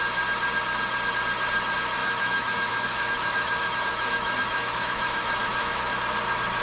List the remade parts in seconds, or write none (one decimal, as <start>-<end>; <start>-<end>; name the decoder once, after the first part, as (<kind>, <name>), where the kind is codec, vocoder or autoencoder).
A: 2.0-6.0 (autoencoder, DAC-VAE)